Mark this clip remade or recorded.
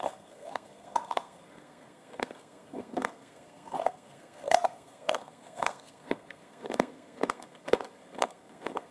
remade